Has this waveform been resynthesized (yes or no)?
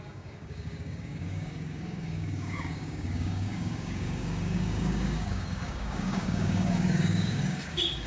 yes